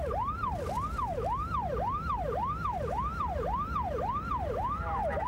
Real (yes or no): yes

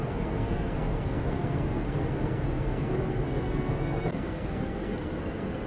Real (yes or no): no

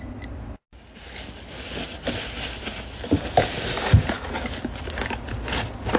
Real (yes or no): yes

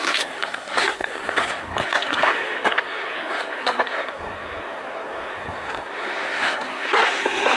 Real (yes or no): no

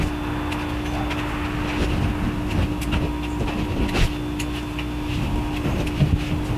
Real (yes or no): yes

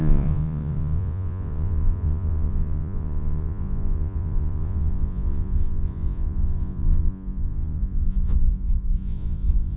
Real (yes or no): no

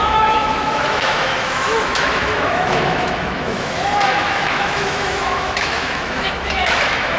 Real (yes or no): no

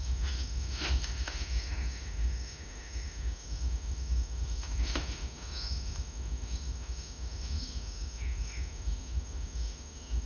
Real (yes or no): no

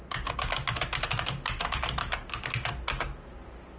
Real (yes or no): yes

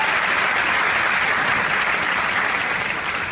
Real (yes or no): yes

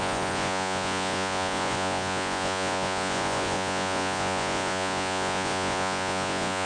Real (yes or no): no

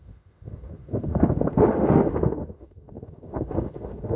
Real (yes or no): no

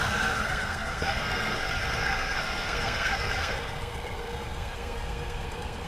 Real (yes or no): no